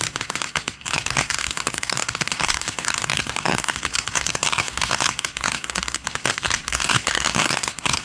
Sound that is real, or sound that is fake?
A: fake